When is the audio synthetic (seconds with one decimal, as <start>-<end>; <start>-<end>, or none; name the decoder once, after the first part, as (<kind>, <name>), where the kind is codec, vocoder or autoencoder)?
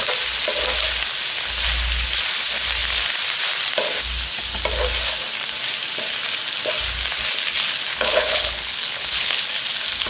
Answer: 7.9-9.4 (codec, HILCodec)